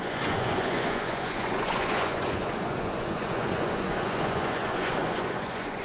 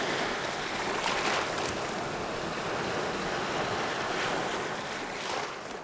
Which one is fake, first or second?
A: first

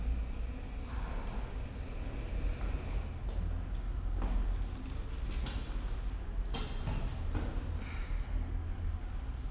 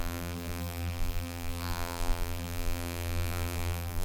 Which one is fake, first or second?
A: second